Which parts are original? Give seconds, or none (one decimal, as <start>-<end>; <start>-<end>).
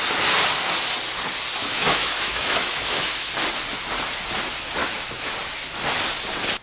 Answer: 0.0-1.6; 3.3-4.8; 5.3-6.6